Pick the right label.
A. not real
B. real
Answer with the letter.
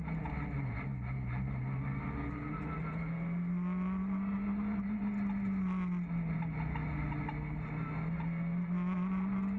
B